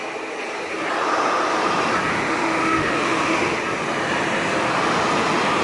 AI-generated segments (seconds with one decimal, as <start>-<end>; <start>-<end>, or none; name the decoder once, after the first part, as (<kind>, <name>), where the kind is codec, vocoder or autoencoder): 2.1-3.6 (autoencoder, DAC-VAE)